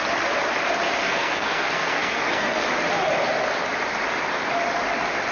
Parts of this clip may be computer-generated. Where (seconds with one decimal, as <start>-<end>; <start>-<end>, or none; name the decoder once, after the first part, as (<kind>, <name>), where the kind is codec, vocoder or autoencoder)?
1.0-2.6 (codec, SNAC)